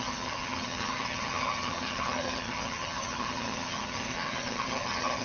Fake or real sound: fake